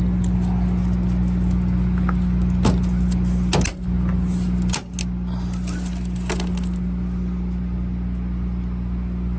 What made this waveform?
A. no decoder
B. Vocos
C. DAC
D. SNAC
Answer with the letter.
A